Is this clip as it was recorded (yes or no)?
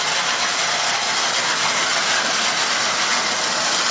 yes